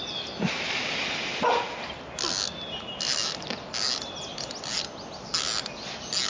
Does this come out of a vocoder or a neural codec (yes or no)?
no